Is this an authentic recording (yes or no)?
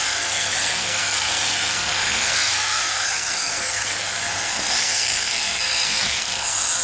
no